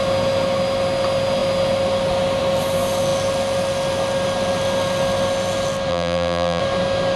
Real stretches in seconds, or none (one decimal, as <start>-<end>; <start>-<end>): 0.0-5.9; 6.6-7.2